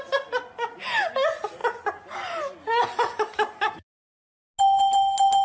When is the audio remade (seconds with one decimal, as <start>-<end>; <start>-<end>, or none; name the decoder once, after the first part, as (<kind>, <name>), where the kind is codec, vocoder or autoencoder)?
none